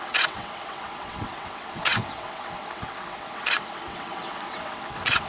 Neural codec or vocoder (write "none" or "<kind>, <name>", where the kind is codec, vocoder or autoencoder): vocoder, WaveNeXt